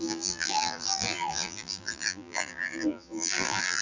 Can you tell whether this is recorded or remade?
remade